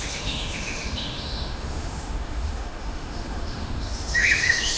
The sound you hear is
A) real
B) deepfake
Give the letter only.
B